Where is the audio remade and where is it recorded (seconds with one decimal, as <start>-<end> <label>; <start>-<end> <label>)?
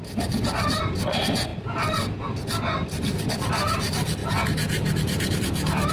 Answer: 0.0-5.9 recorded